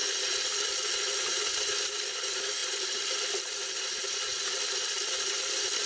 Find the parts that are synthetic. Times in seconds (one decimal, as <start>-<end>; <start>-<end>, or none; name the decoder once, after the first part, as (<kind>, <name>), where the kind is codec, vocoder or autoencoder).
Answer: none